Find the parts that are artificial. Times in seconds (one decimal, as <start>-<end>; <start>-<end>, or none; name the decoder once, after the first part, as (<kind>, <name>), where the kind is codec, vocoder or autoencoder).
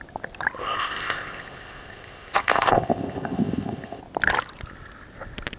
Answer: 0.6-4.0 (codec, ZipCodec)